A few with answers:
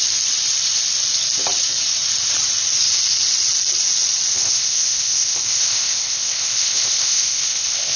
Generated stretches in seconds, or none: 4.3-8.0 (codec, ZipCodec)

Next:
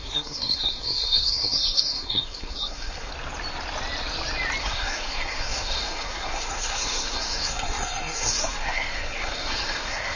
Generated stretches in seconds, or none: 0.0-3.1 (codec, SNAC); 4.6-10.2

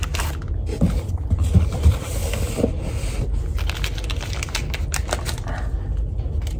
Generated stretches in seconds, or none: none